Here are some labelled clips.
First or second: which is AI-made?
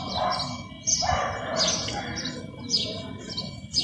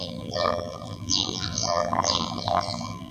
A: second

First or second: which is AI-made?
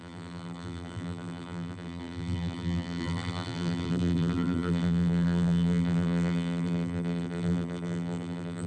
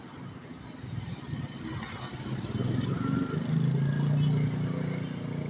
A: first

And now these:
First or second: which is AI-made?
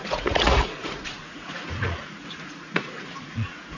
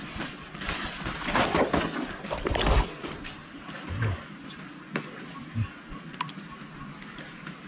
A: first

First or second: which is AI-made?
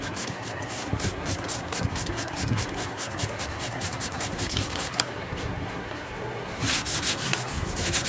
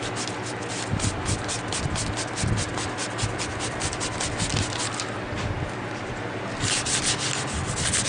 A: first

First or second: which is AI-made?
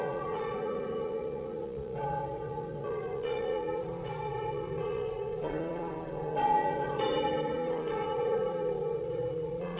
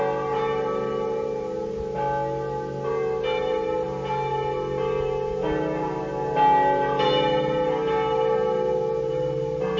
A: first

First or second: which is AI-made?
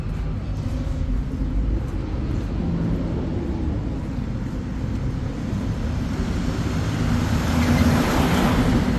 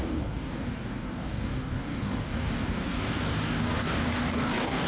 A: second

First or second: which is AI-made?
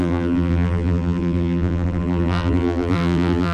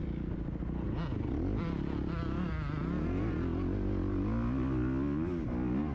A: first